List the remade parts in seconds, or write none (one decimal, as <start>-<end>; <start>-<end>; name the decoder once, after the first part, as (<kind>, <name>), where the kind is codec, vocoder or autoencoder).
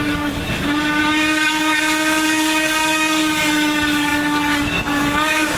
0.0-0.4 (codec, DAC); 1.0-5.6